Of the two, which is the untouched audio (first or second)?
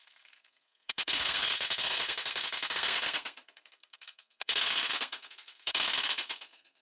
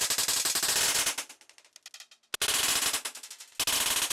second